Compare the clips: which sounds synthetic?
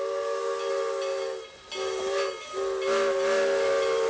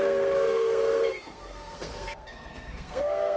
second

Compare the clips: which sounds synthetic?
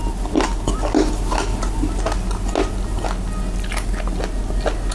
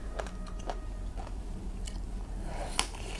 second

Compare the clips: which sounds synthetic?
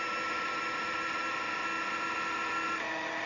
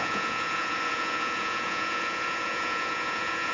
second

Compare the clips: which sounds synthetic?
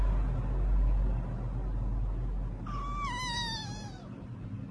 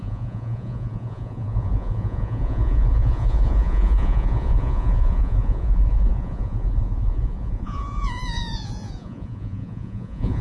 second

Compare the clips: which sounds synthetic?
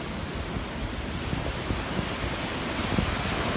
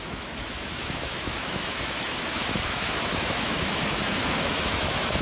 second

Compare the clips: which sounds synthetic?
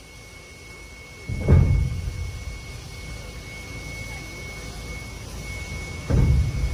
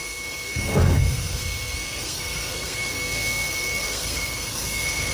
second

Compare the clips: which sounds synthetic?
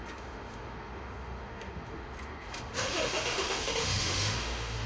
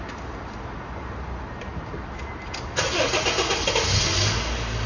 first